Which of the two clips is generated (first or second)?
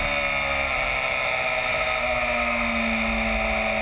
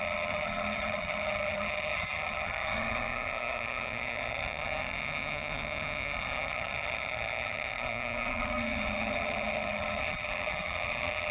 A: second